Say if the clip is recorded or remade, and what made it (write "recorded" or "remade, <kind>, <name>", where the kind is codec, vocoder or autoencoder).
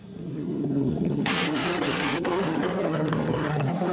remade, codec, SNAC